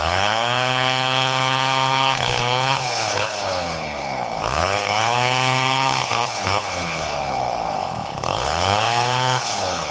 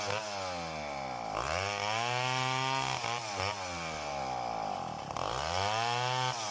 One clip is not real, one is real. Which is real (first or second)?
second